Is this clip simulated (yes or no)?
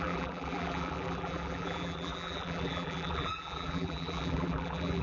yes